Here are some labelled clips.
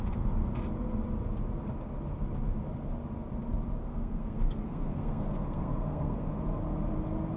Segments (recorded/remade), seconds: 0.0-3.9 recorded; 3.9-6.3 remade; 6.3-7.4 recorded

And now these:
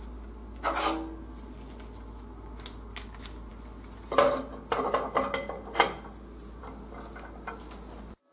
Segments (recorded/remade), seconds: 0.0-8.3 recorded

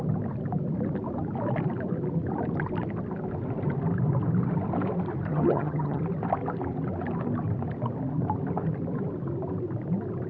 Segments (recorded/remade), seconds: 0.0-5.3 recorded; 5.3-6.0 remade; 6.0-10.3 recorded

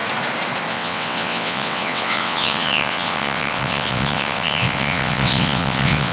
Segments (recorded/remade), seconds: 0.0-0.7 recorded; 0.7-6.1 remade

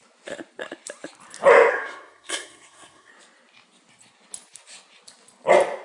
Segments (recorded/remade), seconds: 0.0-1.7 recorded; 1.7-3.1 remade; 3.1-5.8 recorded

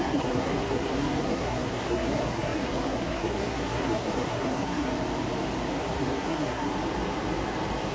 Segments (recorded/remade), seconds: 0.0-4.9 remade; 4.9-5.8 recorded; 5.8-6.7 remade; 6.7-7.9 recorded